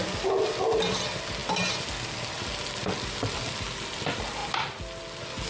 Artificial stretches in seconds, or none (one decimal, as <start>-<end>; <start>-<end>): none